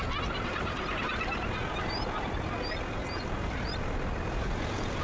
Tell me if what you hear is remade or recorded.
recorded